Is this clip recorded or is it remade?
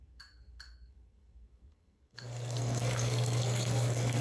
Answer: remade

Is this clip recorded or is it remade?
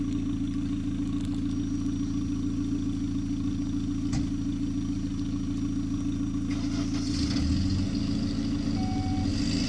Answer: recorded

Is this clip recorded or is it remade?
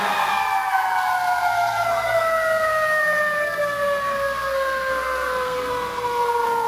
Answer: remade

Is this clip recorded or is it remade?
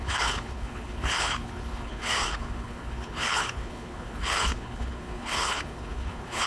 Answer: remade